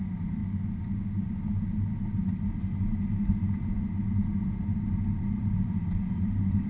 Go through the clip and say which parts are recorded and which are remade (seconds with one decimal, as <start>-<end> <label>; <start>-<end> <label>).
0.0-6.7 recorded